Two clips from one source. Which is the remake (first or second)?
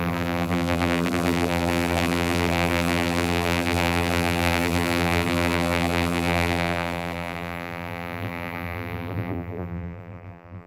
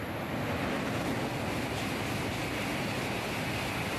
first